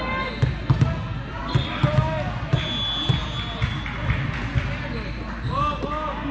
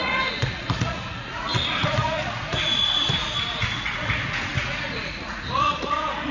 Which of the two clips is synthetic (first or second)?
second